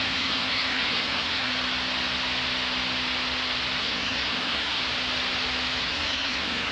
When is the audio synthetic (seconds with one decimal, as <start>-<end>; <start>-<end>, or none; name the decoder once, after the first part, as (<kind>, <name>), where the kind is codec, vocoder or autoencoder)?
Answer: 0.0-1.5 (codec, SNAC); 3.8-4.8; 5.8-6.7